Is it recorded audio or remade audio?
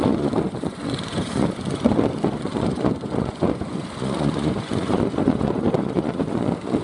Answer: remade